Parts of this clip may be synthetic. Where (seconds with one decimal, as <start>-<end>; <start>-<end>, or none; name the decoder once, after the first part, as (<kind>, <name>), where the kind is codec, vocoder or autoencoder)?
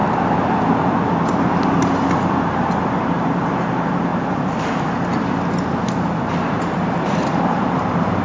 0.0-8.2 (vocoder, BigVGAN v2)